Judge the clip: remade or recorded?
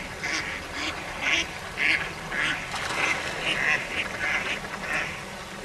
recorded